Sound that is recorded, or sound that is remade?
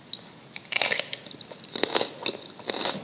recorded